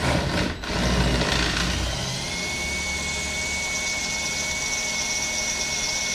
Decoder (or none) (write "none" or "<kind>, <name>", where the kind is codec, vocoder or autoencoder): none